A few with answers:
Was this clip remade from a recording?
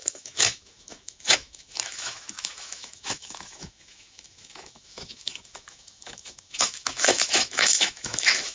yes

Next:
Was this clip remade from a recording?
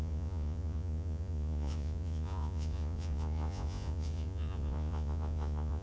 yes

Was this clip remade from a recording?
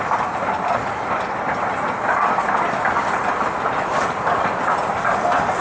no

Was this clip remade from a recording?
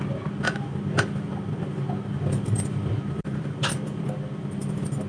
no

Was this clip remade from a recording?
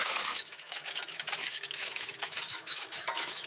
yes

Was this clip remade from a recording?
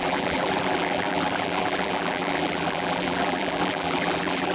yes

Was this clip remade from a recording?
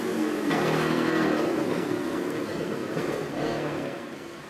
yes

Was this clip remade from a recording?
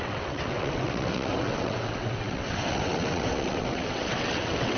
yes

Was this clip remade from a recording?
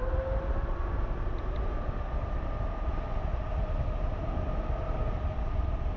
no